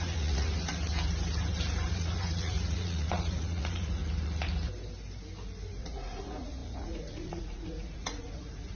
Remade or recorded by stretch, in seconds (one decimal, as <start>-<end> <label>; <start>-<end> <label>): 0.0-0.7 remade; 0.7-1.9 recorded; 1.9-4.0 remade; 4.0-5.8 recorded; 5.8-8.8 remade